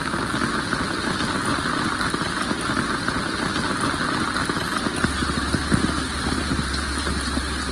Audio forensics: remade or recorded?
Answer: recorded